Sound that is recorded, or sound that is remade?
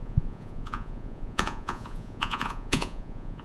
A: remade